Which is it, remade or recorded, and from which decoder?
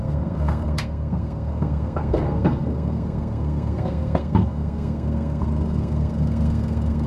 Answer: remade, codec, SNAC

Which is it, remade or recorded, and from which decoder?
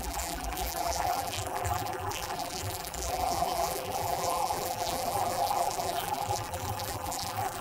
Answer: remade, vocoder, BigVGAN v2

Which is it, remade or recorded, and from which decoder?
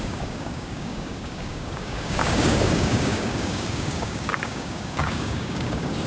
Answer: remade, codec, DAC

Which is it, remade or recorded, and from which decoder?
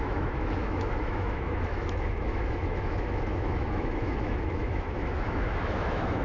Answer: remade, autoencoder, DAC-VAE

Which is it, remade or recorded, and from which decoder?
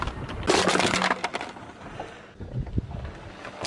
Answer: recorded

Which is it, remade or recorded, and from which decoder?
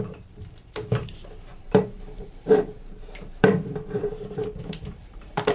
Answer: remade, vocoder, BigVGAN v2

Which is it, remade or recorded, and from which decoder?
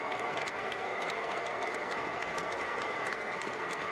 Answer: remade, codec, SNAC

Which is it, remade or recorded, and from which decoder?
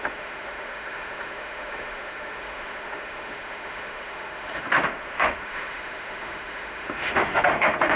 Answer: remade, autoencoder, DAC-VAE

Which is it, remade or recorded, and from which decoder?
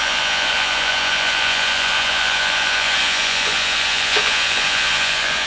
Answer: remade, vocoder, Vocos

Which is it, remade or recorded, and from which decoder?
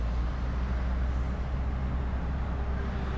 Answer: recorded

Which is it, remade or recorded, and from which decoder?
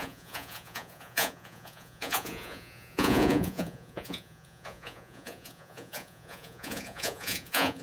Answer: remade, vocoder, Vocos